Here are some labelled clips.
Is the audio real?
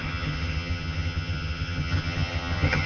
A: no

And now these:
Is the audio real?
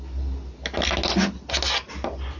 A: yes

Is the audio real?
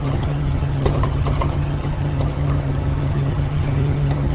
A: no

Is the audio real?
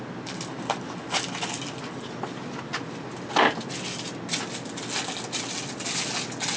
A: yes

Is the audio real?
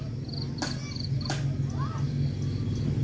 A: yes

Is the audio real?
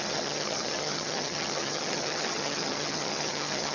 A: no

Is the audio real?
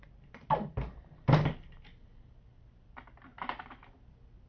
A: yes